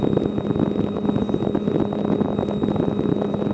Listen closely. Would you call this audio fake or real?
real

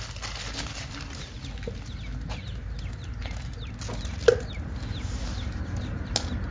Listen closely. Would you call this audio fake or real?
real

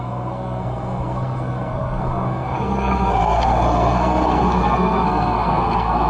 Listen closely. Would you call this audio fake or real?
fake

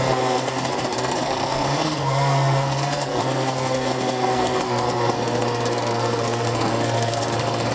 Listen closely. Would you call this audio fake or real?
fake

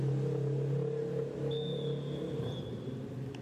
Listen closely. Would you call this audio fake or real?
real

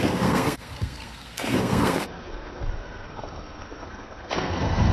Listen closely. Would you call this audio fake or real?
fake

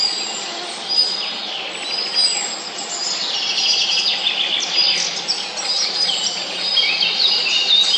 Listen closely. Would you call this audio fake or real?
real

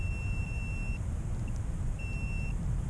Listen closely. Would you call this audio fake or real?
real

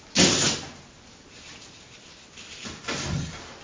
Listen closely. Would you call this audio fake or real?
real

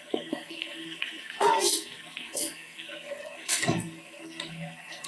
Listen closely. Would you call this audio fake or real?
fake